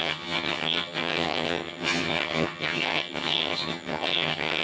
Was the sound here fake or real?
fake